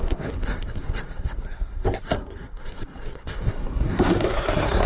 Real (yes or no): no